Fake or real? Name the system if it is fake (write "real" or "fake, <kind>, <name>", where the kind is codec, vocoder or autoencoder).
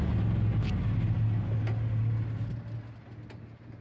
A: real